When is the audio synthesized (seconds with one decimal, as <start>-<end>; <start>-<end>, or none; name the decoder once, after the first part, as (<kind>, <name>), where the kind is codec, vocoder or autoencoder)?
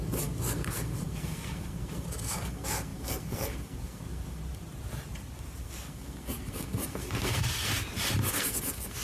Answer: 0.0-4.4 (codec, SNAC); 5.6-7.7; 8.3-9.0